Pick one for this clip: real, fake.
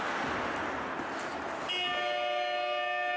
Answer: real